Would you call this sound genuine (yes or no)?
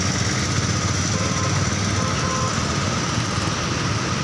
yes